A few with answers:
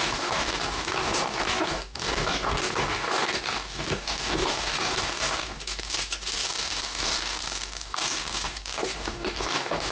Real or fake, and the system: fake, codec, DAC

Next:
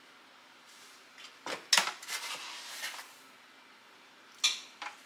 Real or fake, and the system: real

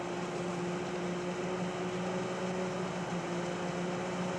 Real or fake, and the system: real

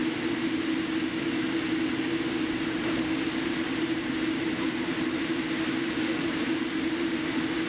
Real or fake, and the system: real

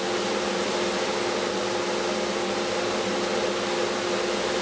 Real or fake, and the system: real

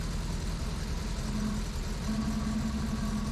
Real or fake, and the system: real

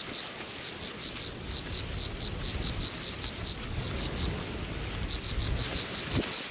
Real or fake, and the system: real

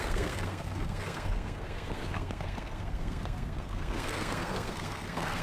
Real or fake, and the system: fake, codec, SNAC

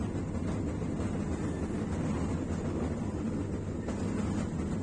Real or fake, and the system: real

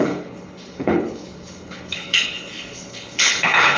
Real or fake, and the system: fake, codec, HILCodec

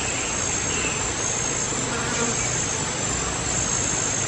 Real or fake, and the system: real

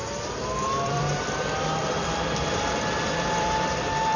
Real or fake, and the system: fake, vocoder, BigVGAN v2